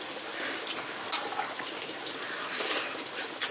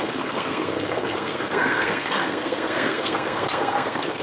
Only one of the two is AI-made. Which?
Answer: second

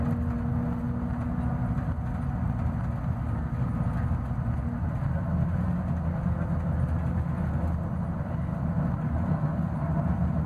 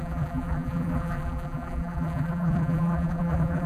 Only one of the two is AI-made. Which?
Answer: second